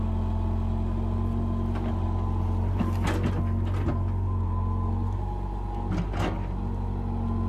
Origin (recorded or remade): recorded